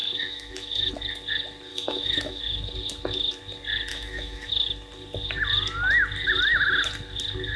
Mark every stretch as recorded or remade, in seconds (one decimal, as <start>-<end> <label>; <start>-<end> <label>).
0.0-0.9 remade; 0.9-1.7 recorded; 1.7-2.4 remade; 2.4-3.9 recorded; 3.9-4.5 remade; 4.5-7.6 recorded